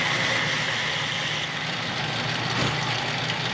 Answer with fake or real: real